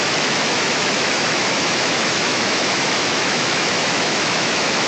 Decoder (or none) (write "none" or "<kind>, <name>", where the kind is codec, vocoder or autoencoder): autoencoder, DAC-VAE